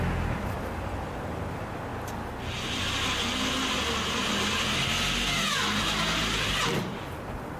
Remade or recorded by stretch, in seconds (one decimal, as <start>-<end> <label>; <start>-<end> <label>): 0.0-7.6 recorded